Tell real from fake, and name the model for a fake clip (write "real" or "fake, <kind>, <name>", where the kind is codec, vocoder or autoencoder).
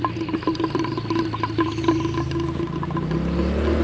real